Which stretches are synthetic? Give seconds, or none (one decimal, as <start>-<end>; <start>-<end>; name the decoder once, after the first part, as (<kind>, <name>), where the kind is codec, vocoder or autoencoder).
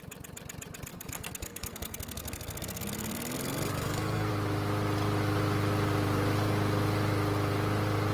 0.9-4.3 (codec, SNAC)